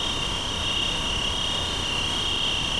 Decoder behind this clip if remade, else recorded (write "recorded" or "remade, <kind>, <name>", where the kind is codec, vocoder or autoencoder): recorded